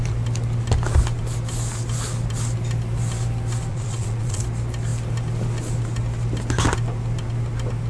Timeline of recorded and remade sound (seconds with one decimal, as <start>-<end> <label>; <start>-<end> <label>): 0.0-3.7 recorded; 3.7-4.4 remade; 4.4-7.9 recorded

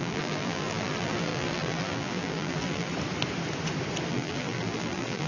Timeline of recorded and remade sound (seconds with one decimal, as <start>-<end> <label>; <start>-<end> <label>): 0.0-2.9 remade; 2.9-4.1 recorded; 4.1-5.3 remade

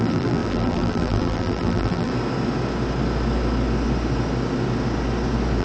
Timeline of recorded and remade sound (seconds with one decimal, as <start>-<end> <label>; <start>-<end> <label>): 0.0-2.1 remade; 2.1-5.6 recorded